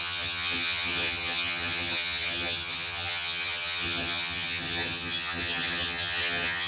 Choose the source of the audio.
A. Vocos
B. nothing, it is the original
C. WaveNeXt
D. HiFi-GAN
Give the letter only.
D